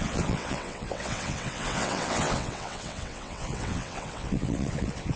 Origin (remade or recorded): remade